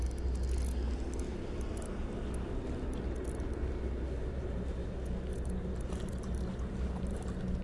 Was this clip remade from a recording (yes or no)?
no